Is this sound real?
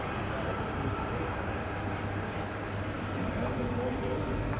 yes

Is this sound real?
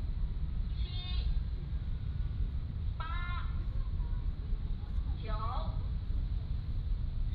no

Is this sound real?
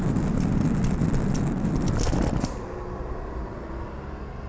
yes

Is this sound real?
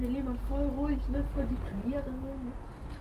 yes